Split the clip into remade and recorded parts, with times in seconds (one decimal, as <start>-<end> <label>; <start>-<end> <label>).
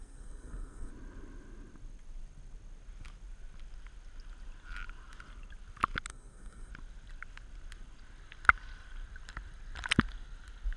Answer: 0.0-0.9 remade; 0.9-6.1 recorded; 6.1-6.7 remade; 6.7-10.8 recorded